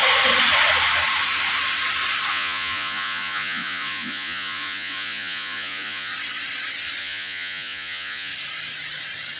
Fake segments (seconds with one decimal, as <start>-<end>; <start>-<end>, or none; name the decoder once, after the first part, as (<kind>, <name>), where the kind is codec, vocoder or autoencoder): 2.3-6.1 (vocoder, Vocos); 7.0-8.3